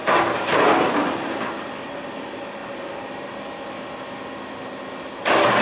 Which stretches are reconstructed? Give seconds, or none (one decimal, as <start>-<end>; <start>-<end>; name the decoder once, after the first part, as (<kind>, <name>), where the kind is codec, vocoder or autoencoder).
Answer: 0.0-1.4 (vocoder, BigVGAN v2); 2.6-3.3